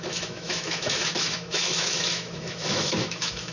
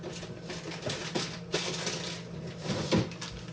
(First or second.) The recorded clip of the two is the second